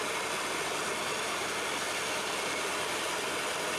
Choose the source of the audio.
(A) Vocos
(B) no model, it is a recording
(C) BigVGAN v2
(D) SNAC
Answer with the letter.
C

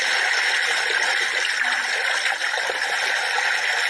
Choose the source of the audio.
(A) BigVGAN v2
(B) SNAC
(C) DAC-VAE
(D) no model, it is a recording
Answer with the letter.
D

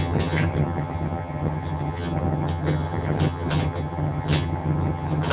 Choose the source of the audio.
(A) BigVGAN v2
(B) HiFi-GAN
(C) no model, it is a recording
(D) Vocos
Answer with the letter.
B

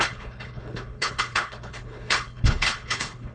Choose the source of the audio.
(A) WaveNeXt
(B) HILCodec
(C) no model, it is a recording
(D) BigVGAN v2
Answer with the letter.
B